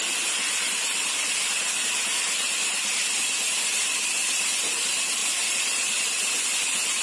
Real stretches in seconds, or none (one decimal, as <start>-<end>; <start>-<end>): 0.0-7.0